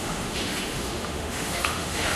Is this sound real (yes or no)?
no